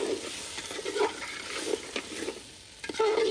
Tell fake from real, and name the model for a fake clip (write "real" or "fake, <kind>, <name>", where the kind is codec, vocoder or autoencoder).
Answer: real